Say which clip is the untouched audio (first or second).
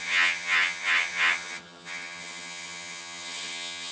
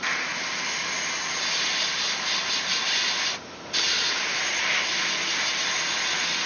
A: second